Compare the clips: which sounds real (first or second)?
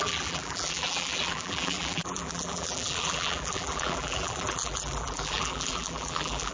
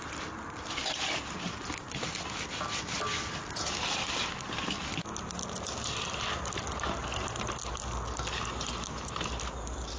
second